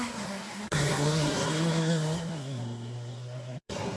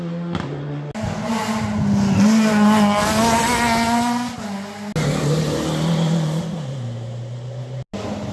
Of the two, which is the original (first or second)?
second